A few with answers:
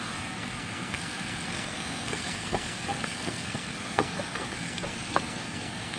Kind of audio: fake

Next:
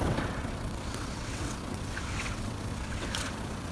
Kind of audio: fake